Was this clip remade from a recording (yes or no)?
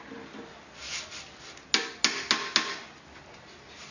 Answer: no